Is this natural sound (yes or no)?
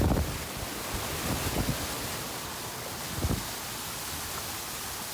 yes